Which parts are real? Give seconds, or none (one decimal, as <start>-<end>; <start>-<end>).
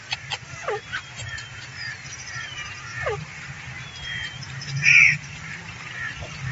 0.0-0.9; 2.5-2.9; 3.5-5.0; 5.6-6.5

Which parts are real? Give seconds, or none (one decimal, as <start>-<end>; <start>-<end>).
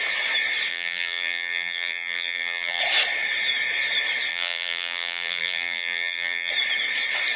0.0-0.7; 2.8-4.3; 6.5-7.3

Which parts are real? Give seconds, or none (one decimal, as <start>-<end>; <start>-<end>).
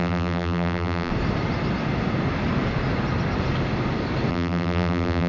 1.1-4.3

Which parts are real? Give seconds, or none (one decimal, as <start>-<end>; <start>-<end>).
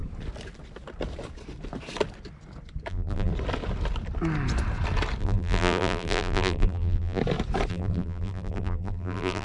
0.0-2.9; 3.3-5.2; 7.2-7.7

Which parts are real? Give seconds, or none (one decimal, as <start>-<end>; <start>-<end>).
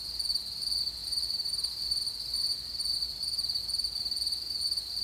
3.6-4.6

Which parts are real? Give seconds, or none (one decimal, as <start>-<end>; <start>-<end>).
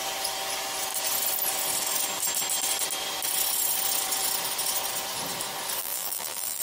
0.0-5.8